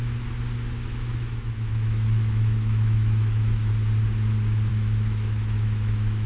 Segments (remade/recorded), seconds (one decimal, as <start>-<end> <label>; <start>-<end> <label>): 0.0-0.9 recorded; 0.9-3.7 remade; 3.7-4.7 recorded; 4.7-6.3 remade